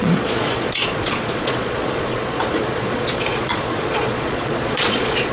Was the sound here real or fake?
fake